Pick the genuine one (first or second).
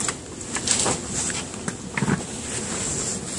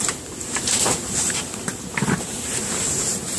first